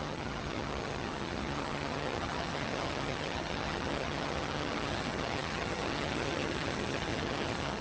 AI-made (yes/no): yes